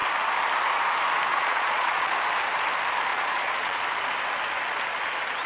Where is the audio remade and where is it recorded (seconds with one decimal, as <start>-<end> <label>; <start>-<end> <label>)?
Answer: 0.0-1.3 recorded; 1.3-2.1 remade; 2.1-3.1 recorded; 3.1-3.8 remade; 3.8-5.5 recorded